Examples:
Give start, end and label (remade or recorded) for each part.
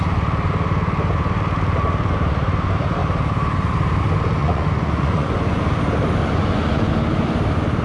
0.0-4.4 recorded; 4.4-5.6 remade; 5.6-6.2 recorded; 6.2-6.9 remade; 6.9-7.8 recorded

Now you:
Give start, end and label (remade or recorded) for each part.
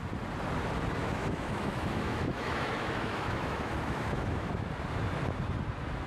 0.0-1.0 recorded; 1.0-4.7 remade; 4.7-6.1 recorded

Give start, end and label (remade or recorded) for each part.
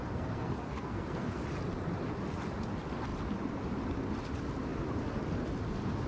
0.0-1.4 remade; 1.4-6.1 recorded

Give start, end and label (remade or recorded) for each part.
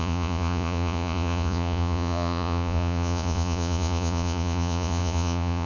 0.0-5.7 remade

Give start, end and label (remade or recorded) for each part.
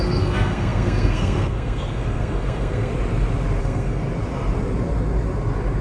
0.0-2.9 remade; 2.9-3.6 recorded; 3.6-4.0 remade; 4.0-5.8 recorded